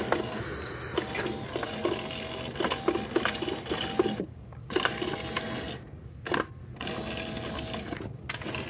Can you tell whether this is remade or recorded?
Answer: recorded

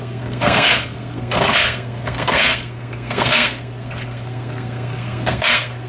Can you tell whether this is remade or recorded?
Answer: remade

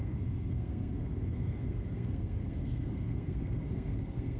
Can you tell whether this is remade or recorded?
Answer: remade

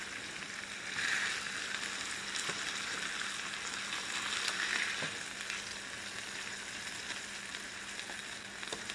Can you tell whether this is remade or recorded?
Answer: recorded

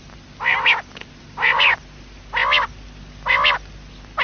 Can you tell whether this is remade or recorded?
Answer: recorded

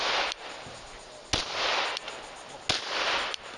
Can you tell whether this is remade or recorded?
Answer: recorded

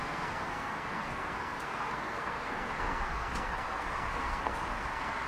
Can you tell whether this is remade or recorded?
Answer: remade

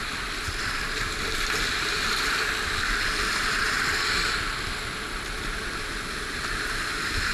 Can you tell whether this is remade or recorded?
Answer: recorded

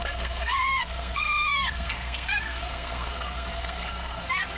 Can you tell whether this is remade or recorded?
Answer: remade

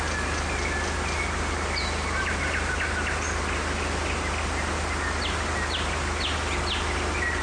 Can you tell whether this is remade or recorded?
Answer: recorded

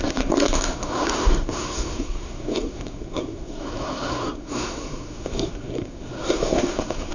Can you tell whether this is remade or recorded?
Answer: remade